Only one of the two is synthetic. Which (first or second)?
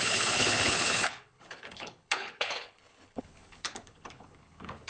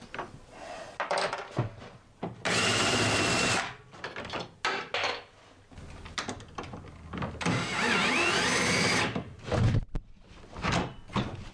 first